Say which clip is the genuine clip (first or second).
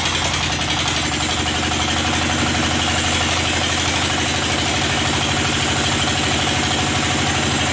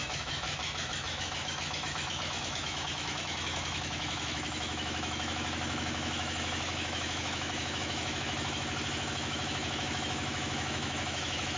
first